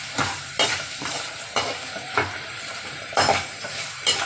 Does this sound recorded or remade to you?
remade